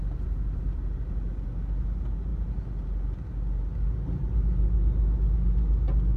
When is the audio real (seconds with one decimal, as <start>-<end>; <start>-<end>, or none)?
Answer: 0.0-6.2